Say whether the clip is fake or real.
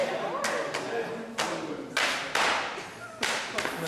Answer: real